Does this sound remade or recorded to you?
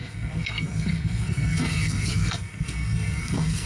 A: remade